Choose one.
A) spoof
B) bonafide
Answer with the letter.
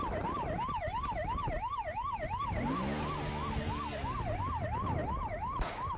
B